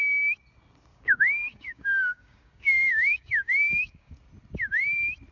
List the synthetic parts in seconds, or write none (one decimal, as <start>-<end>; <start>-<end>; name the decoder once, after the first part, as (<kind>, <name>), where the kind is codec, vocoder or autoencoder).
0.9-4.1 (codec, DAC)